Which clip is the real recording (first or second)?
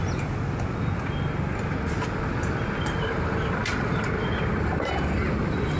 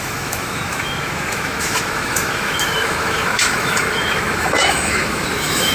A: first